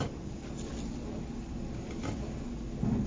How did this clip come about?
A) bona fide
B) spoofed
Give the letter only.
A